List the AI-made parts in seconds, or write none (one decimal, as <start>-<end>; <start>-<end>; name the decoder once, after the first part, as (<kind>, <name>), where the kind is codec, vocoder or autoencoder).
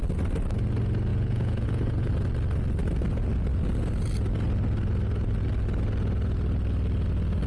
1.1-2.1 (vocoder, Vocos)